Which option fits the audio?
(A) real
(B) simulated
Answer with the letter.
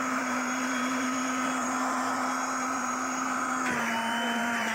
B